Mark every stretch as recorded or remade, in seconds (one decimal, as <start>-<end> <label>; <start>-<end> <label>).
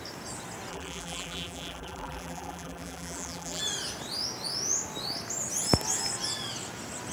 0.0-0.7 recorded; 0.7-3.6 remade; 3.6-7.1 recorded